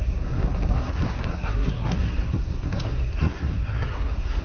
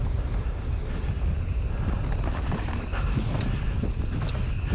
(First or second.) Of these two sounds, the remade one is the first